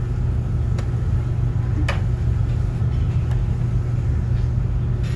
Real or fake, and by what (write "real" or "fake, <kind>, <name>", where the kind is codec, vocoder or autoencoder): real